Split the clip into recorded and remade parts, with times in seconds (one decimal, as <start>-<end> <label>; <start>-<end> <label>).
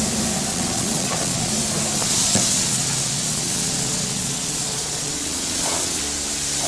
0.0-0.5 recorded; 0.5-1.5 remade; 1.5-2.0 recorded; 2.0-6.0 remade; 6.0-6.7 recorded